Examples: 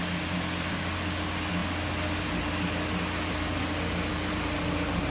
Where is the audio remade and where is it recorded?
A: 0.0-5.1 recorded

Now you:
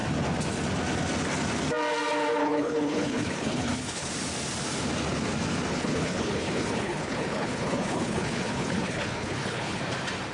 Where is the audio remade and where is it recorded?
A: 0.0-2.4 recorded; 2.4-4.1 remade; 4.1-5.7 recorded; 5.7-9.8 remade; 9.8-10.3 recorded

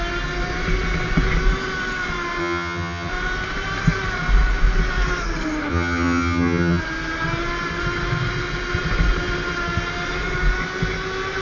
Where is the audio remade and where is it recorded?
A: 0.0-2.4 recorded; 2.4-3.1 remade; 3.1-5.7 recorded; 5.7-6.8 remade; 6.8-11.4 recorded

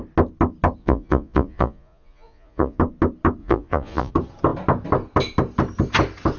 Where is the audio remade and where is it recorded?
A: 0.0-0.8 recorded; 0.8-2.8 remade; 2.8-3.4 recorded; 3.4-4.1 remade; 4.1-6.4 recorded

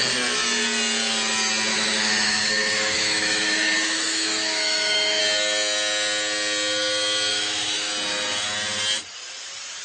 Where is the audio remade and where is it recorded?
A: 0.0-1.7 recorded; 1.7-5.2 remade; 5.2-7.3 recorded; 7.3-7.9 remade; 7.9-9.8 recorded

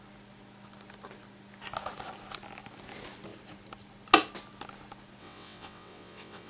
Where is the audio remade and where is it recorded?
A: 0.0-5.2 recorded; 5.2-6.5 remade

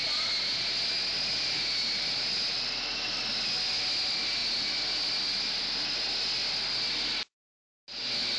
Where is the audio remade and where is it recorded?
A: 0.0-8.4 recorded

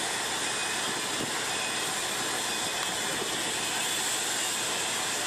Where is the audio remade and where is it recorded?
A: 0.0-5.3 recorded